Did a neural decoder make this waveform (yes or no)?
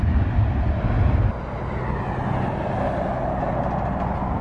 no